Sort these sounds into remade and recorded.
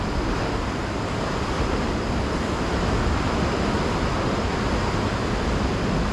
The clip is recorded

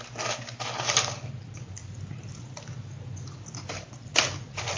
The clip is recorded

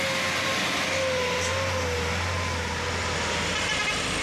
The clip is recorded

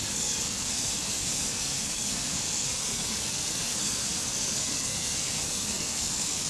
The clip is remade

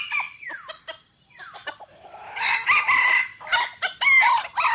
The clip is remade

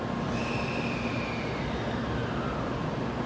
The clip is recorded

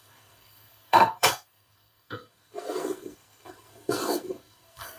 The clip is remade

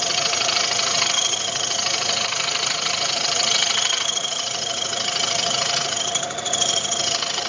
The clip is remade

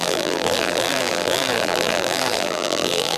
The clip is remade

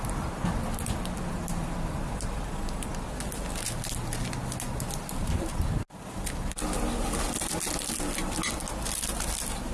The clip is recorded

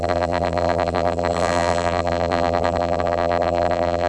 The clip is remade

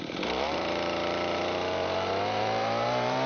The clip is remade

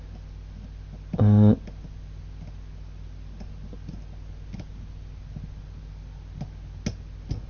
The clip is recorded